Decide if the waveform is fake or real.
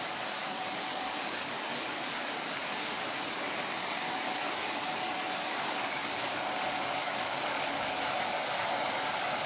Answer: fake